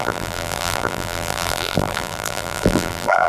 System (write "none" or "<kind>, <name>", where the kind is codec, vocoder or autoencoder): vocoder, BigVGAN v2